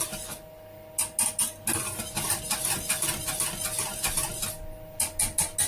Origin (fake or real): real